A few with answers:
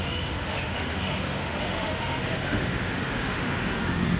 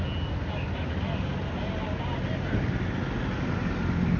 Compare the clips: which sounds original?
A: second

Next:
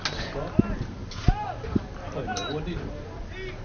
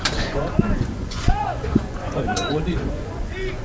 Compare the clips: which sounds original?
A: first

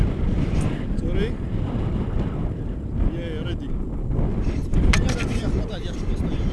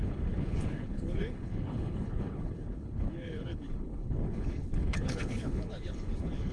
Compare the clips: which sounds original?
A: first